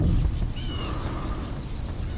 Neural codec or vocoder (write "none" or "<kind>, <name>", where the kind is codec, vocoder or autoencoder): none